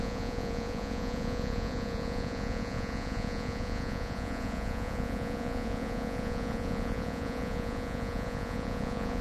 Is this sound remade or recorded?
remade